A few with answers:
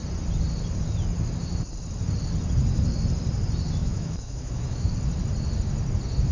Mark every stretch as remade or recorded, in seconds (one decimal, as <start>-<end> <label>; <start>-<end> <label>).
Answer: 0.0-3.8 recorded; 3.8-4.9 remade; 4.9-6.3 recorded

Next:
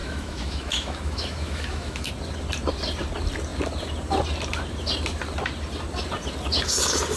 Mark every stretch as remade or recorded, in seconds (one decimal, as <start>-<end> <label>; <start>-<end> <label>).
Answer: 0.0-2.1 remade; 2.1-7.2 recorded

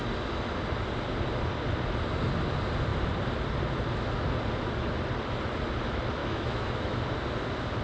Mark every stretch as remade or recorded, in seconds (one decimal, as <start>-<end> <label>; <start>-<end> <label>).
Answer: 0.0-6.2 recorded; 6.2-7.0 remade; 7.0-7.8 recorded